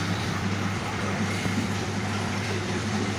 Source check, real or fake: fake